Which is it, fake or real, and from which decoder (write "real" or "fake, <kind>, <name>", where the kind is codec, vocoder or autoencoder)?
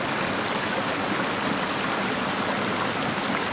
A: real